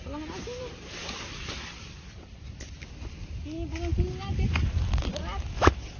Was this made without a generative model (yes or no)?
yes